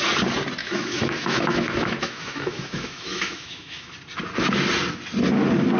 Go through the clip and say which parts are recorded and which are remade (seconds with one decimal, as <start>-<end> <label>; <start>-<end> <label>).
0.0-0.6 recorded; 0.6-3.9 remade; 3.9-5.8 recorded